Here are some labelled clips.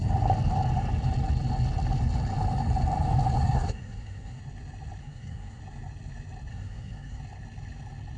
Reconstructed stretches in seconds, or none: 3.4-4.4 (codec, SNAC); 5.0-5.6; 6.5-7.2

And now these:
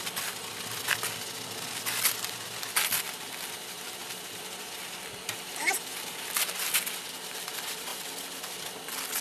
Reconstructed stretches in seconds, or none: none

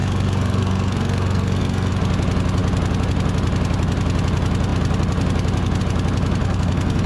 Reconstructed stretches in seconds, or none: 0.0-1.9 (codec, SNAC); 6.4-7.1

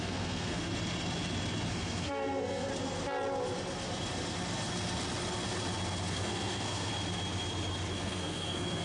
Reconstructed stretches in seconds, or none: 0.0-0.7 (codec, SNAC); 1.7-2.7; 6.1-6.9; 7.9-8.8